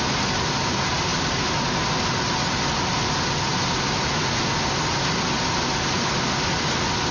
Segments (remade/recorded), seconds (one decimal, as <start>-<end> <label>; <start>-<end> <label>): 0.0-7.1 recorded